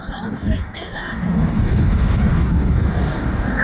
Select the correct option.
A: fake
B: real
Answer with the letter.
A